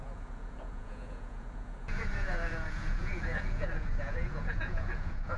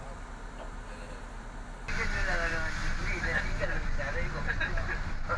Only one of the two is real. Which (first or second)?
second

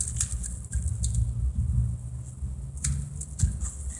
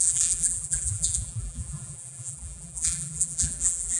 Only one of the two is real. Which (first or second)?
first